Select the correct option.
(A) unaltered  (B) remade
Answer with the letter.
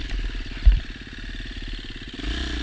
A